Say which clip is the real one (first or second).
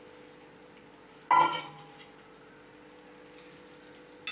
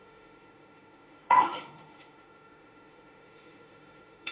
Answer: first